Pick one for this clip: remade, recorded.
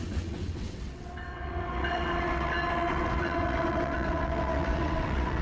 remade